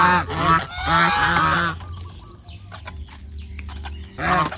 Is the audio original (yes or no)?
yes